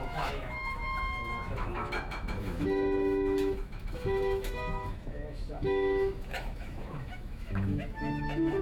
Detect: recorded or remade remade